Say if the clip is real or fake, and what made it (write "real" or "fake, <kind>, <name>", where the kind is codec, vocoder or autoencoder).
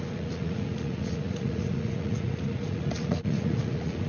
fake, vocoder, Vocos